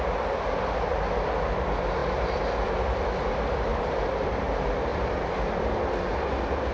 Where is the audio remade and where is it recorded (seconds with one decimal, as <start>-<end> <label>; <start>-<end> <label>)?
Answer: 0.0-3.7 recorded; 3.7-4.3 remade; 4.3-4.9 recorded; 4.9-5.7 remade; 5.7-6.7 recorded